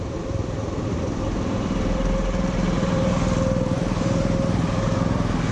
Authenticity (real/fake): fake